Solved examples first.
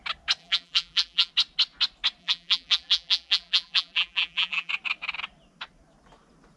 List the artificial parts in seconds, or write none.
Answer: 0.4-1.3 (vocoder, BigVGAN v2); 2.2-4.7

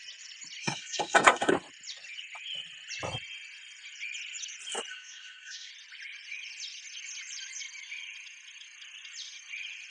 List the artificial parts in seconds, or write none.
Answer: 0.6-1.5 (codec, SNAC); 4.9-5.7

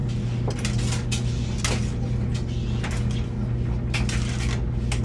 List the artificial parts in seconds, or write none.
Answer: none

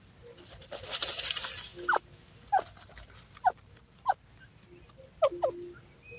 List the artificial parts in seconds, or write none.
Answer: none